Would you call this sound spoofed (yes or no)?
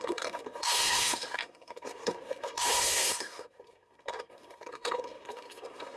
yes